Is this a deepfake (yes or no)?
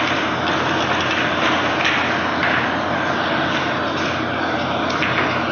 no